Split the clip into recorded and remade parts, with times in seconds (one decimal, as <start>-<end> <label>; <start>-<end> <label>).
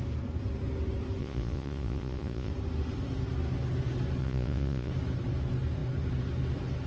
0.0-1.2 recorded; 1.2-2.5 remade; 2.5-4.2 recorded; 4.2-4.9 remade; 4.9-6.9 recorded